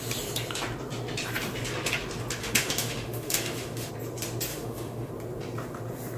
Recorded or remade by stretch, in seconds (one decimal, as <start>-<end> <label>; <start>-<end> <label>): 0.0-2.4 recorded; 2.4-3.9 remade; 3.9-4.5 recorded; 4.5-5.1 remade; 5.1-6.2 recorded